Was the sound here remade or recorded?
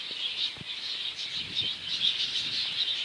recorded